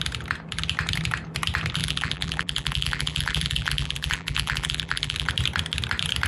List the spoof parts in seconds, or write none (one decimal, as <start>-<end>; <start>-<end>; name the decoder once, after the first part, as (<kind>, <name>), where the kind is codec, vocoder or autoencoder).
1.8-5.3 (vocoder, BigVGAN v2)